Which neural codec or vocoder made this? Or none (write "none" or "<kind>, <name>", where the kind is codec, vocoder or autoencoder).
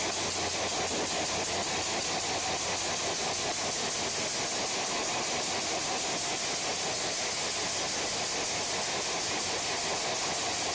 none